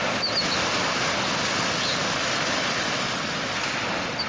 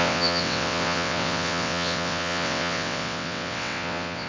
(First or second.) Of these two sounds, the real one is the first